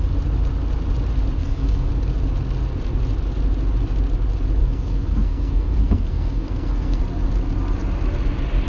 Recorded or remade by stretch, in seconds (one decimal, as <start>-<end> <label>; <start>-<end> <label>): 0.0-1.4 recorded; 1.4-1.9 remade; 1.9-4.6 recorded; 4.6-7.0 remade; 7.0-8.7 recorded